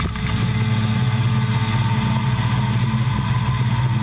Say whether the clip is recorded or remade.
recorded